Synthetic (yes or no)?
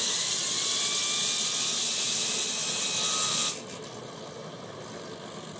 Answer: no